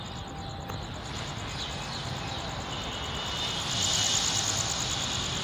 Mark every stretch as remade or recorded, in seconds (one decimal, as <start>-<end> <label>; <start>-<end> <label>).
0.0-5.4 recorded